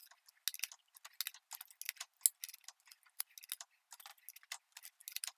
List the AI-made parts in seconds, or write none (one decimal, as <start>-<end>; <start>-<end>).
none